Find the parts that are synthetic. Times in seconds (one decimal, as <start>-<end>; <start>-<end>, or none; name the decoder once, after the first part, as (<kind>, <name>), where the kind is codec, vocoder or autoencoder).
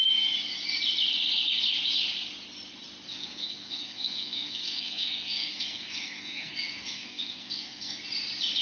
3.1-8.0 (codec, SNAC)